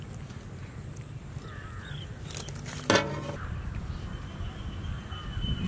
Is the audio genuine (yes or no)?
yes